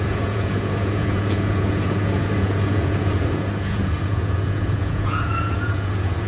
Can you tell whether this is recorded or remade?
remade